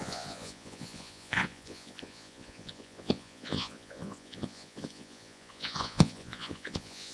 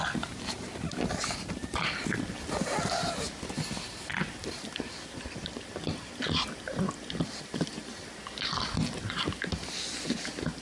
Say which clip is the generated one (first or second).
first